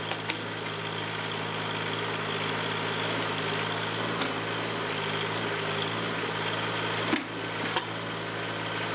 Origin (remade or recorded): recorded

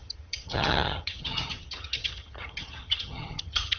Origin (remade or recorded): remade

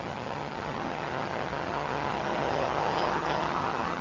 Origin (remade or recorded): remade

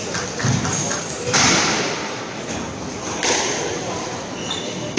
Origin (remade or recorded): recorded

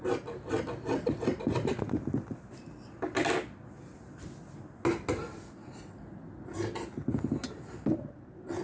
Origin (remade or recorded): recorded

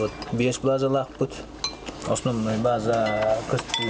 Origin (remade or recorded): recorded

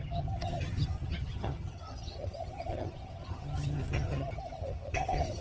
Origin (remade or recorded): remade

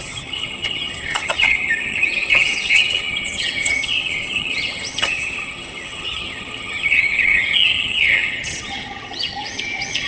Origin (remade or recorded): remade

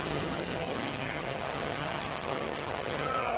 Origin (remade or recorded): remade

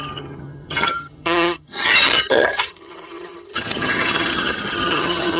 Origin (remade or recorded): remade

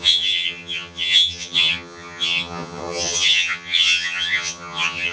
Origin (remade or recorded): remade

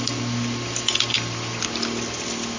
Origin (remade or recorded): recorded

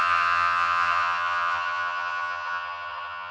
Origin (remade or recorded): remade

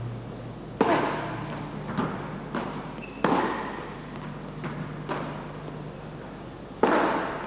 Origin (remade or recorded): recorded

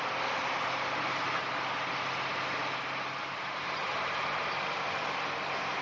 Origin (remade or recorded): recorded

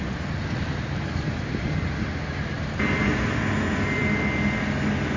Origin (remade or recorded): recorded